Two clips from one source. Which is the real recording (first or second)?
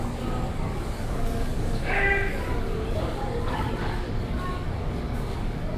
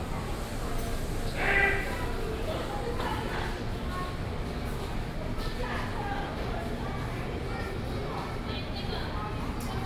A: second